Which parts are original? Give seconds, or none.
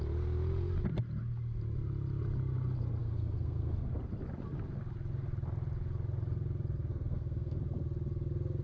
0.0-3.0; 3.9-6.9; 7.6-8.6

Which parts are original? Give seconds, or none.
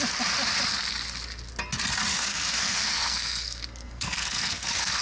0.0-2.1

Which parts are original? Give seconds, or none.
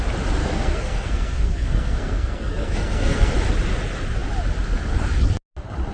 0.0-0.4; 3.3-5.9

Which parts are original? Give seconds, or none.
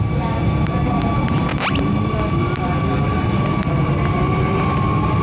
0.0-5.2